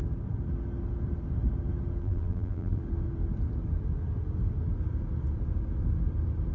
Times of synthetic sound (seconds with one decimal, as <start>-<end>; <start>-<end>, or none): 2.0-2.8